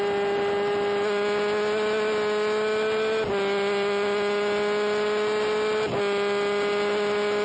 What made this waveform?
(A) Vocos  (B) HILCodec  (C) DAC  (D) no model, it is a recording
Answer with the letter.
D